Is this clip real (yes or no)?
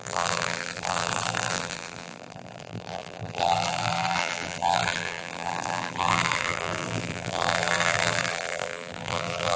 no